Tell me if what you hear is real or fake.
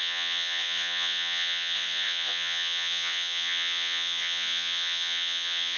fake